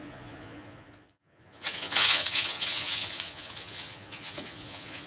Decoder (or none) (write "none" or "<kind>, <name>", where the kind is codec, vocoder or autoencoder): vocoder, Vocos